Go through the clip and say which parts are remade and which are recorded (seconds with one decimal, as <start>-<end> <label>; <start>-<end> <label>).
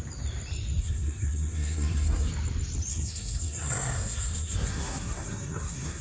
0.0-0.8 recorded; 0.8-2.3 remade; 2.3-2.9 recorded; 2.9-6.0 remade